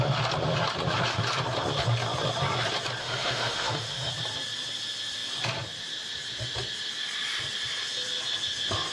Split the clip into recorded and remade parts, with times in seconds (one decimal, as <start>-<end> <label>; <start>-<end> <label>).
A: 0.0-3.0 recorded; 3.0-4.1 remade; 4.1-8.9 recorded